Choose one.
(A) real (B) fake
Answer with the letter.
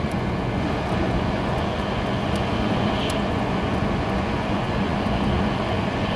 B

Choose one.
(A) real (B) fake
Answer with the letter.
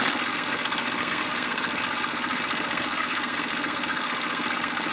B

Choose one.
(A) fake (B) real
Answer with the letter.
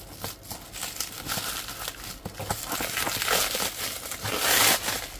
B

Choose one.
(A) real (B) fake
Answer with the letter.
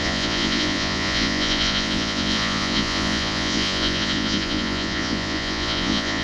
B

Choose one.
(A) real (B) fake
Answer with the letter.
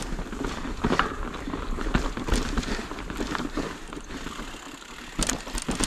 A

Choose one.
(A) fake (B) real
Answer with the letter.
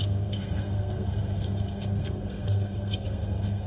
A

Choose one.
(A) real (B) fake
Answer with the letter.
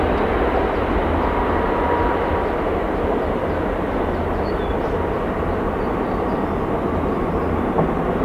A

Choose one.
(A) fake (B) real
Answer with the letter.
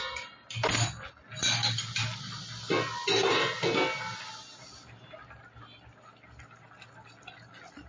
B